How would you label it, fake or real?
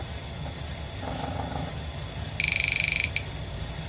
real